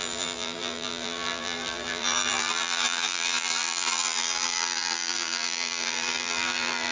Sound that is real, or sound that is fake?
fake